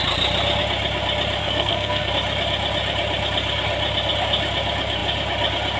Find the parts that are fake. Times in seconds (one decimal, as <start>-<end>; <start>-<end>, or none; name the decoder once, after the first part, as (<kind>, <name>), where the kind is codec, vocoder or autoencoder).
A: 1.4-2.1 (codec, SNAC)